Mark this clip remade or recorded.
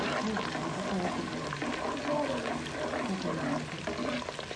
recorded